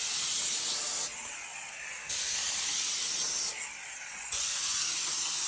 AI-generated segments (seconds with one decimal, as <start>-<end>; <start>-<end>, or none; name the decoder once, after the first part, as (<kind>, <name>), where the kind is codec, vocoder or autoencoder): 4.1-4.8 (vocoder, Vocos)